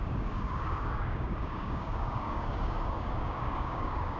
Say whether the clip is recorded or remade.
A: remade